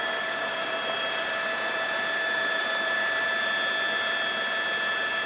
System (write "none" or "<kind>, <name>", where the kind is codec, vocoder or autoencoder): none